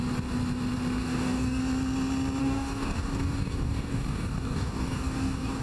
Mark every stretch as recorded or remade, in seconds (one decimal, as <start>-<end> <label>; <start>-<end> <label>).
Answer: 0.0-1.0 recorded; 1.0-1.6 remade; 1.6-2.4 recorded; 2.4-5.6 remade